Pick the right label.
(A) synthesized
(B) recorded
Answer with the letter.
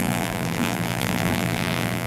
A